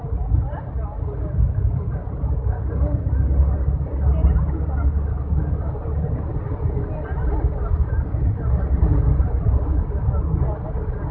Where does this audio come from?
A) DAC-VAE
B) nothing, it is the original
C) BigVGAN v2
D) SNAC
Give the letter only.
B